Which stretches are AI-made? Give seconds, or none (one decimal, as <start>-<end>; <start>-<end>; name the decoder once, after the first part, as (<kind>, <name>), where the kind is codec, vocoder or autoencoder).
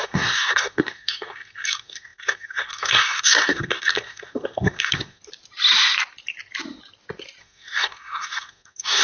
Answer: 0.0-5.2 (codec, SNAC); 7.4-9.0